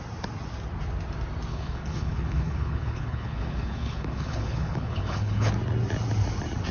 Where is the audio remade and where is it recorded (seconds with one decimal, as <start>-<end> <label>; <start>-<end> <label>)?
0.0-1.5 recorded; 1.5-5.5 remade; 5.5-6.7 recorded